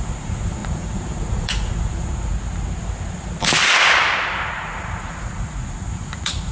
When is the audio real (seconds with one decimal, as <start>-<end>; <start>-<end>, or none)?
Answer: 2.3-4.3